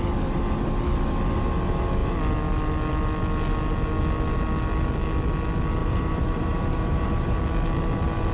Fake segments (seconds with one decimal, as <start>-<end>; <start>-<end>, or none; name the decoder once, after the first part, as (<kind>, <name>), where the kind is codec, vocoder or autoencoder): 5.8-7.4 (vocoder, BigVGAN v2)